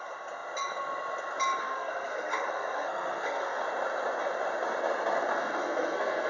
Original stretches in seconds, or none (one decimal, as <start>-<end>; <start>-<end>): 0.0-1.6; 3.6-5.3